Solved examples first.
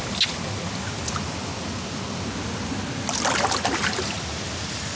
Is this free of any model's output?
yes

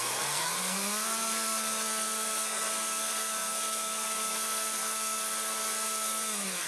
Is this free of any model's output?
no